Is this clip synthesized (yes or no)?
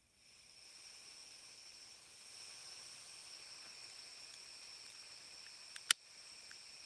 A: no